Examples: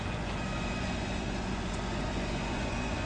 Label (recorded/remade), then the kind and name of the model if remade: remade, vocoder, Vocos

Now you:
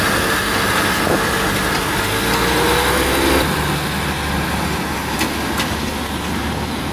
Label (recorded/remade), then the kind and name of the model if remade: recorded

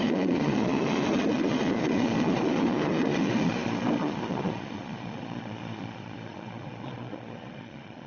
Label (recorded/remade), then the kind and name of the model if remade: remade, vocoder, Vocos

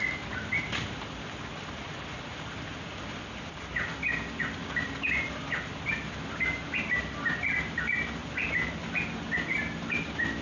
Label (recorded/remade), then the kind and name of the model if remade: recorded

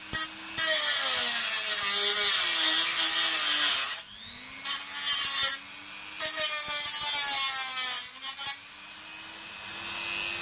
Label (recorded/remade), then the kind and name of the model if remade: recorded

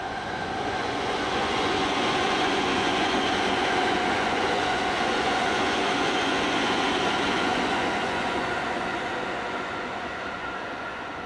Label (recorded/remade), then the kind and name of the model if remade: remade, vocoder, Vocos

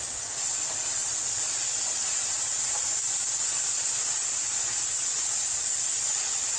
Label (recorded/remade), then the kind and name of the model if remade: remade, vocoder, Vocos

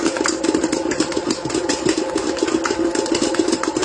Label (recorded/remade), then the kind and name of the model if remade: recorded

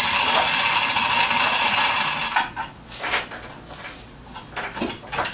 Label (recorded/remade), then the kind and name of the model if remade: recorded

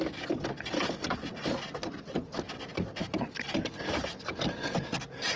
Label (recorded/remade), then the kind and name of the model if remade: recorded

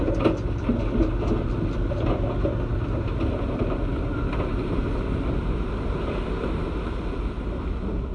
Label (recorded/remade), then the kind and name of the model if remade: recorded